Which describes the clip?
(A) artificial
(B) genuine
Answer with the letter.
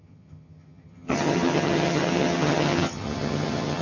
A